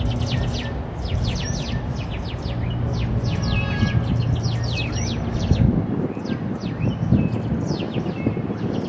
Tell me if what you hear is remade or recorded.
recorded